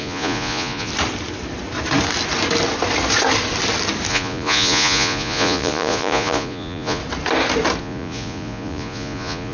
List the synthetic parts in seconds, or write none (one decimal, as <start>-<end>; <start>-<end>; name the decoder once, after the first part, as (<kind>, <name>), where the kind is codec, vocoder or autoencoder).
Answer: 0.0-0.9 (vocoder, Vocos); 4.1-7.0; 7.8-9.5